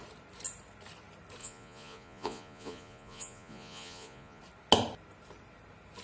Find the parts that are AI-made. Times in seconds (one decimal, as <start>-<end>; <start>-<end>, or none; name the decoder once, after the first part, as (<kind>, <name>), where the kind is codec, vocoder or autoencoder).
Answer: 1.4-4.4 (vocoder, Vocos)